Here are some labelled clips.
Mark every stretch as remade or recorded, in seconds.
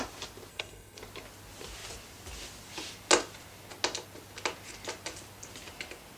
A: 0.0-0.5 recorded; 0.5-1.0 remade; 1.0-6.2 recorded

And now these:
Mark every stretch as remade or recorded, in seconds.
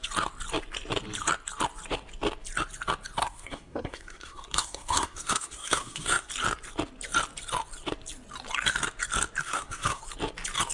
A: 0.0-3.2 recorded; 3.2-6.3 remade; 6.3-9.4 recorded; 9.4-10.0 remade; 10.0-10.7 recorded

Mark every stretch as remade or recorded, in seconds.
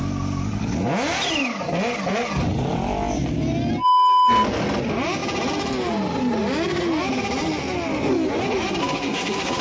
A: 0.0-8.8 recorded; 8.8-9.6 remade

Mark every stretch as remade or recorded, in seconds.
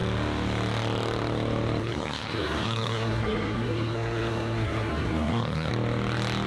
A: 0.0-1.8 recorded; 1.8-5.7 remade; 5.7-6.5 recorded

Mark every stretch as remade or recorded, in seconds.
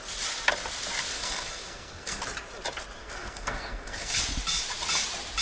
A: 0.0-1.1 recorded; 1.1-2.2 remade; 2.2-3.0 recorded; 3.0-4.2 remade; 4.2-5.4 recorded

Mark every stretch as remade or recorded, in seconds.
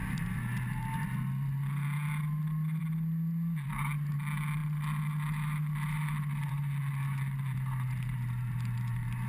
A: 0.0-9.3 recorded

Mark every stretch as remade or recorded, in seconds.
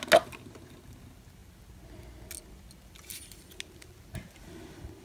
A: 0.0-5.0 recorded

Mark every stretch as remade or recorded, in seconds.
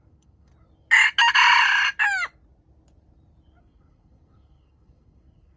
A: 0.0-0.5 remade; 0.5-3.6 recorded; 3.6-5.6 remade